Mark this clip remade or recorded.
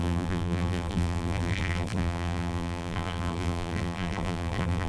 remade